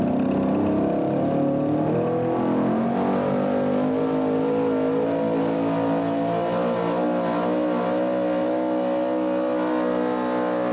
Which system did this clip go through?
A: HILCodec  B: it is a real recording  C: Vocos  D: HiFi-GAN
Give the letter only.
B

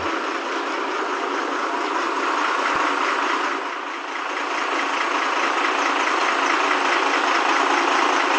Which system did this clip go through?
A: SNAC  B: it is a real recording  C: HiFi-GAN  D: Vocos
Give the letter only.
B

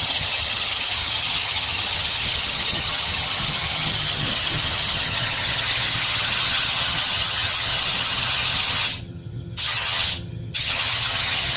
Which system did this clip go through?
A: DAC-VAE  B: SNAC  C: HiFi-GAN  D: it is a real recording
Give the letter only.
C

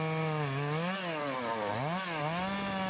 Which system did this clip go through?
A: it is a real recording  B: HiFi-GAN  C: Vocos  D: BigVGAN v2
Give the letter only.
A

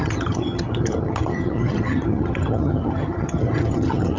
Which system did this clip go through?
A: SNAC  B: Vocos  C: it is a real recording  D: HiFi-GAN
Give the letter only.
D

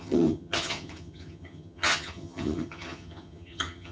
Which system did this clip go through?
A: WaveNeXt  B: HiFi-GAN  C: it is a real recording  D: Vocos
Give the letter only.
B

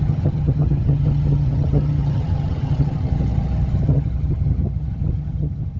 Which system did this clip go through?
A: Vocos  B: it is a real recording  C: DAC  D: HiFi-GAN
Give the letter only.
D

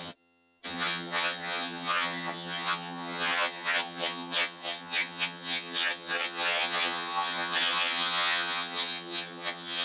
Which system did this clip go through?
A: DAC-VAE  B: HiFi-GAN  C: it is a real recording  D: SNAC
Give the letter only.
B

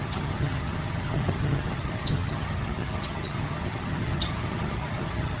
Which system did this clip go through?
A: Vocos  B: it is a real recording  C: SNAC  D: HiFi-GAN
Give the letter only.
D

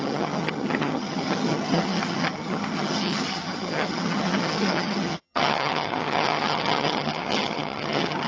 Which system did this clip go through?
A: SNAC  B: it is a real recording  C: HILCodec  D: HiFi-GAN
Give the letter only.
D